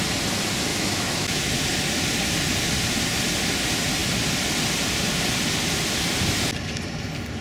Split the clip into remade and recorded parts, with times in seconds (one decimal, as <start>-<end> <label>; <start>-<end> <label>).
0.0-0.7 recorded; 0.7-1.5 remade; 1.5-7.4 recorded

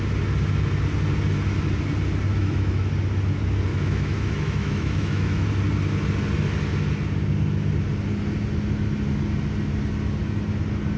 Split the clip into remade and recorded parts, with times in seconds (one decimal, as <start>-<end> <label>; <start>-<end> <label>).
0.0-2.3 recorded; 2.3-2.8 remade; 2.8-3.7 recorded; 3.7-5.5 remade; 5.5-11.0 recorded

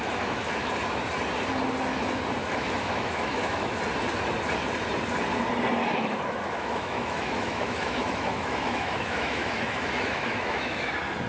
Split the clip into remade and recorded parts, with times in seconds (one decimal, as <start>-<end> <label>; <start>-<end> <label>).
0.0-0.7 remade; 0.7-2.4 recorded; 2.4-3.8 remade; 3.8-5.8 recorded; 5.8-10.9 remade; 10.9-11.3 recorded

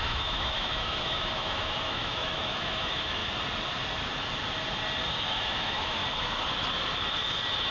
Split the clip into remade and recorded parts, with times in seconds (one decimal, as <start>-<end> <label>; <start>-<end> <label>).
0.0-3.2 remade; 3.2-5.3 recorded; 5.3-6.0 remade; 6.0-7.7 recorded

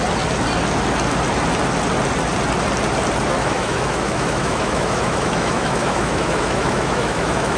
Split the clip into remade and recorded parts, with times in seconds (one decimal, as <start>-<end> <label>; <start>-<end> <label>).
0.0-3.4 recorded; 3.4-7.6 remade